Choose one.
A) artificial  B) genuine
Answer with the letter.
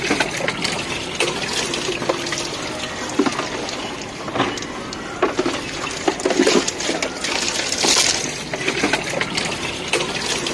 B